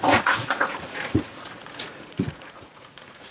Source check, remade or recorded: remade